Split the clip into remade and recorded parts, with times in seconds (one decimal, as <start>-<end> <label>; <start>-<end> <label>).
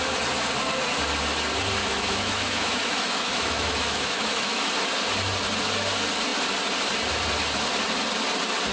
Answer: 0.0-1.8 recorded; 1.8-4.7 remade; 4.7-8.7 recorded